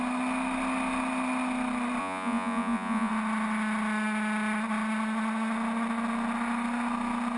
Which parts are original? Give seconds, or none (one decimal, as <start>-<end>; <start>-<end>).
0.0-2.0; 3.1-7.4